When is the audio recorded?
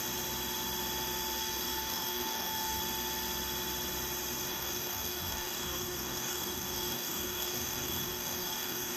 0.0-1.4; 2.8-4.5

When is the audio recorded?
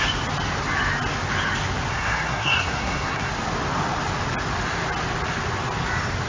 0.0-1.9; 3.3-6.3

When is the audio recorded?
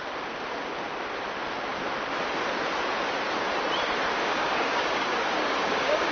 0.0-4.3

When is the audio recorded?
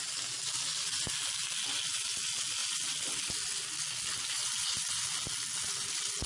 0.0-6.3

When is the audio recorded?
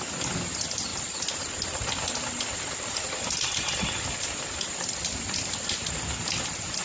0.0-6.8